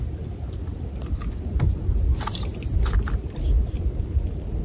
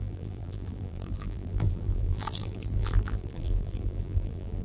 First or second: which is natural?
first